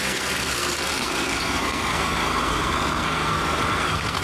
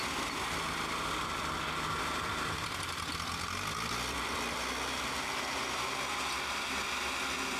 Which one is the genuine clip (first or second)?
second